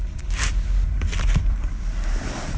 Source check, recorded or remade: remade